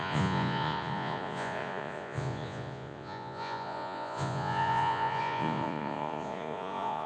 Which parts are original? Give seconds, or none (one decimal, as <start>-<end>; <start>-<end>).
none